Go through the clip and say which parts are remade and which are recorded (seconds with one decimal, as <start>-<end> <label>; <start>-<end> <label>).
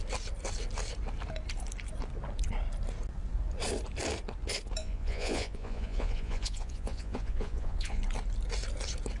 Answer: 0.0-4.8 recorded; 4.8-8.0 remade; 8.0-9.2 recorded